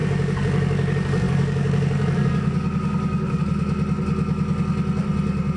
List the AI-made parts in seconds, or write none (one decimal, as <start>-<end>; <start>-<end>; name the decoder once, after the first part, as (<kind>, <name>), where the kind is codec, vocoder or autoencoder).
0.0-3.4 (codec, DAC)